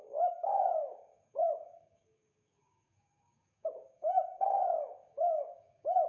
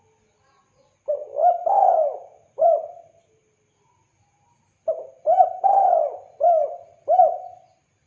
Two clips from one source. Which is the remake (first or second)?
first